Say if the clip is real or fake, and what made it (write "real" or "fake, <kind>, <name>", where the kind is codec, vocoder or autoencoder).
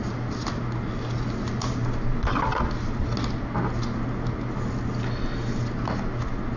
real